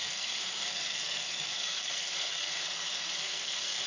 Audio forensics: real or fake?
fake